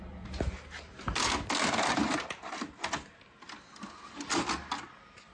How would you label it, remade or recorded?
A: recorded